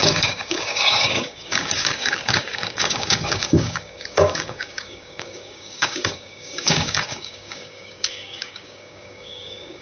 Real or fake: fake